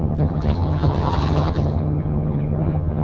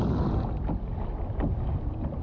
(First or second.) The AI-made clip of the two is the first